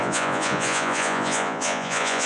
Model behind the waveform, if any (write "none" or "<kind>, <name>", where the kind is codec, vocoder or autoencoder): vocoder, Vocos